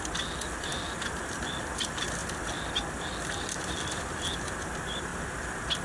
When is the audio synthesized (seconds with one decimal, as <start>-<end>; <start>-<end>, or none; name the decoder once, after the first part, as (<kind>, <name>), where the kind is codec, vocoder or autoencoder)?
none